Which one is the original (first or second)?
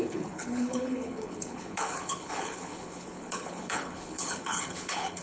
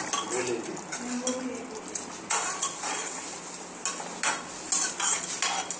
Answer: second